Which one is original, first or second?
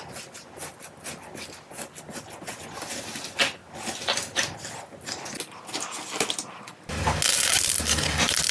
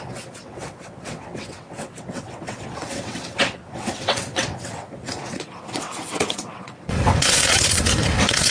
first